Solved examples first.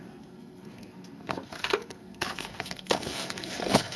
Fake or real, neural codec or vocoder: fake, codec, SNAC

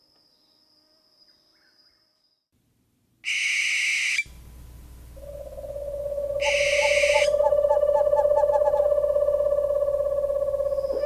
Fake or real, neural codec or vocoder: real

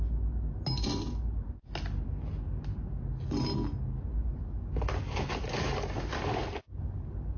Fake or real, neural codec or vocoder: real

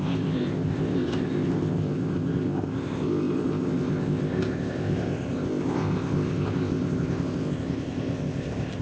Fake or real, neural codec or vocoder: fake, codec, ZipCodec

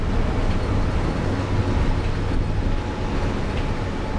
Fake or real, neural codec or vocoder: real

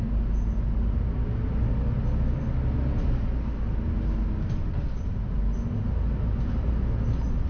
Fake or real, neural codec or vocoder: real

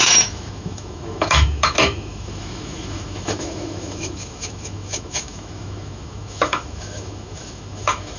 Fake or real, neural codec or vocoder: fake, autoencoder, DAC-VAE